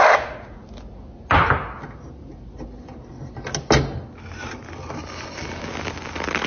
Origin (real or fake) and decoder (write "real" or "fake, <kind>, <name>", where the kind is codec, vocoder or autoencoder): real